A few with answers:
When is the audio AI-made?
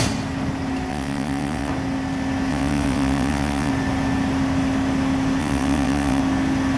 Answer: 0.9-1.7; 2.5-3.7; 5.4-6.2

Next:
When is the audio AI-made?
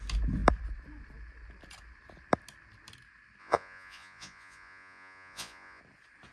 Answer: 3.4-5.8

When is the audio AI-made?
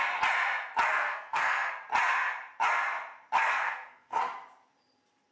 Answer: 0.9-1.7; 3.5-4.2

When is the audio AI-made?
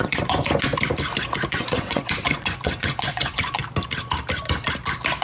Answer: 0.0-0.7; 1.5-3.6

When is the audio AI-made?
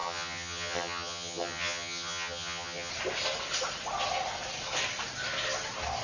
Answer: 0.0-2.9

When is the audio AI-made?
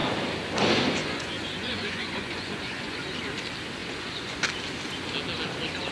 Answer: 1.0-3.1; 3.8-4.4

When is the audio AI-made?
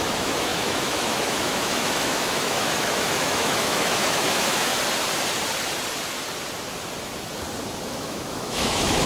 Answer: 0.0-4.7; 7.9-9.1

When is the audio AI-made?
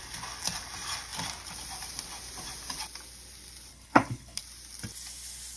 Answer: 3.7-4.4